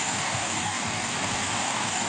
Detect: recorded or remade remade